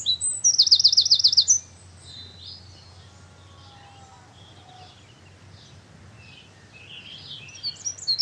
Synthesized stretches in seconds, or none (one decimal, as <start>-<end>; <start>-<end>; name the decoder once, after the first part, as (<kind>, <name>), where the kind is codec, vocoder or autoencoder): none